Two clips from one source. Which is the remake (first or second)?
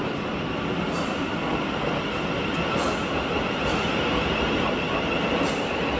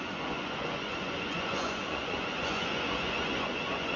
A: second